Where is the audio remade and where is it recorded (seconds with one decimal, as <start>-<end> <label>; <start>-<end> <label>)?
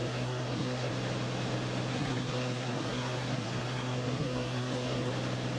0.0-0.9 remade; 0.9-1.9 recorded; 1.9-5.1 remade; 5.1-5.6 recorded